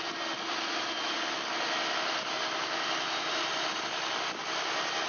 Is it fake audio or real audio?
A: real